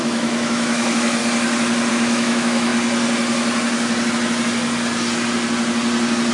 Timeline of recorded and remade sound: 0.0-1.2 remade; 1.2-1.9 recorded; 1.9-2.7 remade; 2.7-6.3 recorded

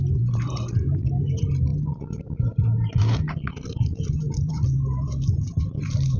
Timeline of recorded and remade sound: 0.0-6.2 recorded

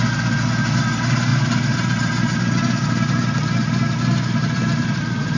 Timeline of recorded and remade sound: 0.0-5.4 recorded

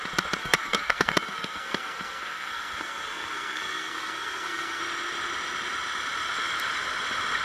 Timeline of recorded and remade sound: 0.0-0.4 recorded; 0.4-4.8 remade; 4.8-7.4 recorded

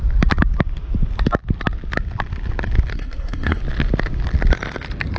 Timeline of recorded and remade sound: 0.0-2.9 recorded; 2.9-3.6 remade; 3.6-5.2 recorded

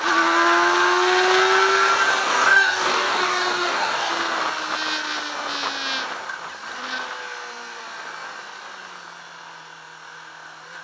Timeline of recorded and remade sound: 0.0-2.2 recorded; 2.2-4.1 remade; 4.1-10.8 recorded

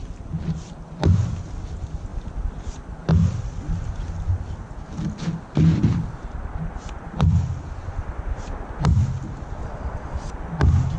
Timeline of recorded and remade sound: 0.0-9.6 recorded; 9.6-10.3 remade; 10.3-11.0 recorded

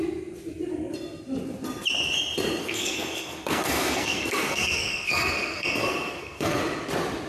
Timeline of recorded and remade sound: 0.0-2.6 recorded; 2.6-6.6 remade; 6.6-7.3 recorded